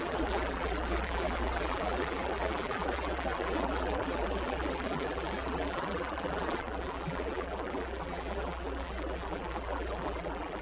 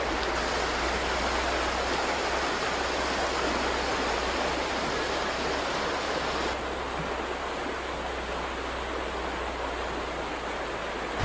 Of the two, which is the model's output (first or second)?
first